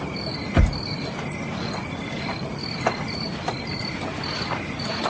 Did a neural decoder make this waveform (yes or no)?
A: no